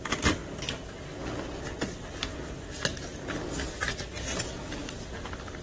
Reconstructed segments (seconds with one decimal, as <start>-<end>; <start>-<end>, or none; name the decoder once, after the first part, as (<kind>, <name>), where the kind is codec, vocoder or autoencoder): none